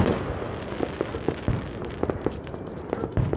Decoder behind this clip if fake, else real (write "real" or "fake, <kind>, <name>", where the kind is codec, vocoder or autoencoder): real